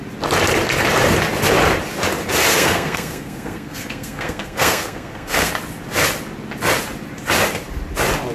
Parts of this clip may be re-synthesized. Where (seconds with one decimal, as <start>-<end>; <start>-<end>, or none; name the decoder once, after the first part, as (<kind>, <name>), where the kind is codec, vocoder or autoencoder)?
2.5-5.5 (codec, SNAC)